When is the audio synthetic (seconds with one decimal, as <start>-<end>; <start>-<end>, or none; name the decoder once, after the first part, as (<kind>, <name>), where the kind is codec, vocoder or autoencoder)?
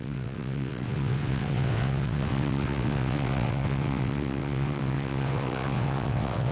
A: 0.0-6.5 (vocoder, WaveNeXt)